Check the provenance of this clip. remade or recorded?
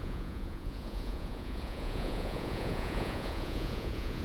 remade